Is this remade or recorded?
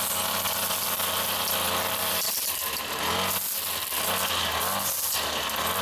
recorded